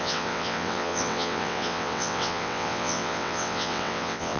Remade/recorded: remade